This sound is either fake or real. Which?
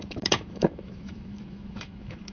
fake